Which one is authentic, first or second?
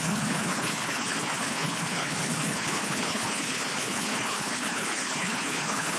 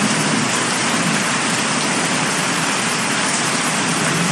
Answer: second